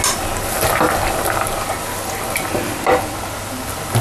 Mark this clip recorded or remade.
recorded